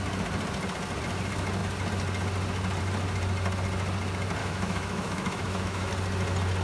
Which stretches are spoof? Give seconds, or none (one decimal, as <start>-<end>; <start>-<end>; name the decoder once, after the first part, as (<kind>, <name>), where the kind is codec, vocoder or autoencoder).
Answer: 4.4-5.9 (autoencoder, DAC-VAE)